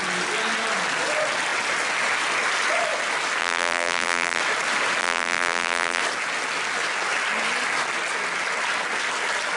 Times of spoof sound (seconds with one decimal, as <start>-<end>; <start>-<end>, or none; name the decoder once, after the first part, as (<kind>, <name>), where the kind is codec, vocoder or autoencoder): 3.4-4.4 (vocoder, BigVGAN v2); 5.0-6.0